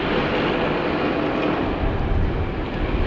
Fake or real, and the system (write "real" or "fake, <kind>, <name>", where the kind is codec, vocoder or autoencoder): real